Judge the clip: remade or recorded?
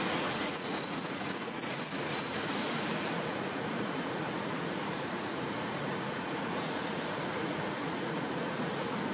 remade